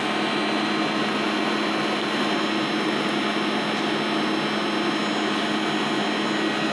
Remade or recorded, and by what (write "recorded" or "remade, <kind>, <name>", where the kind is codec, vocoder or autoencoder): recorded